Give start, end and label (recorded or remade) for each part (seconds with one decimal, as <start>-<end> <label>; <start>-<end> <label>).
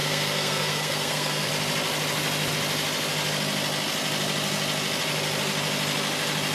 0.0-1.5 remade; 1.5-6.5 recorded